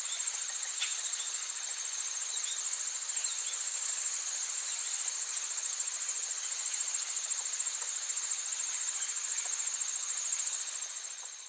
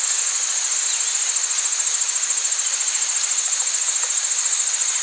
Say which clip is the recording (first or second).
second